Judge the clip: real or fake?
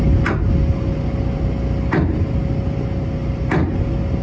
real